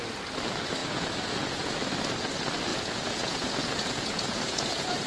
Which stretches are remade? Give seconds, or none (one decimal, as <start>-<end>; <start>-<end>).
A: 0.8-1.7; 2.7-5.1